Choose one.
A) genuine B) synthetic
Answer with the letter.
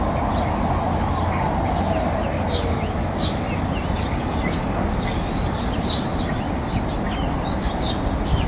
A